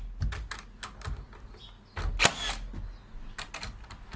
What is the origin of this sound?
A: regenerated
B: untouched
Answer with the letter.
B